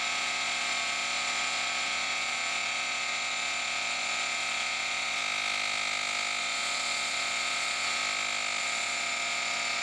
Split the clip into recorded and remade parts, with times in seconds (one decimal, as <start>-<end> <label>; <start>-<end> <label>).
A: 0.0-5.2 remade; 5.2-6.4 recorded; 6.4-8.0 remade; 8.0-8.6 recorded; 8.6-9.8 remade